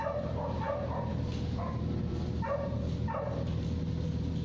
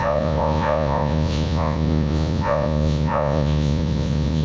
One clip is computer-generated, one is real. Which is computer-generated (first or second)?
second